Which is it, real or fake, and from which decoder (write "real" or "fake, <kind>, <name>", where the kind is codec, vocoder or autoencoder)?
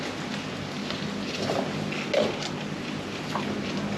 real